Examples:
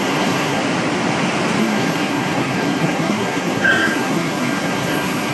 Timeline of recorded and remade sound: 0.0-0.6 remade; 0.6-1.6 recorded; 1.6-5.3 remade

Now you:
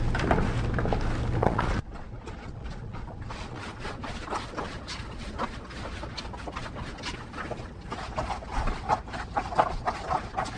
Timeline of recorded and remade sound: 0.0-1.4 recorded; 1.4-3.6 remade; 3.6-10.6 recorded